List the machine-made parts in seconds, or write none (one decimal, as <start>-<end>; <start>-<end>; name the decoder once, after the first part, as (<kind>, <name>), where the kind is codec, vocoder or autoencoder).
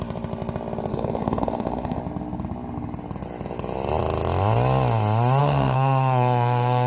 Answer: 0.9-2.0 (codec, SNAC); 5.4-6.9